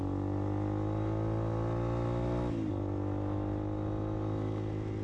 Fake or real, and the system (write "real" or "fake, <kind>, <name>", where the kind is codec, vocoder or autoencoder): real